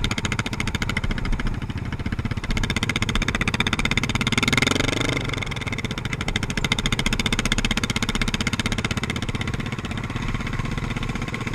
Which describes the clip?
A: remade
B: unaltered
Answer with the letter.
A